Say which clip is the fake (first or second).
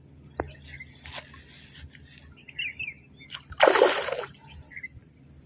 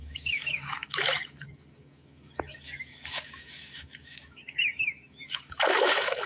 second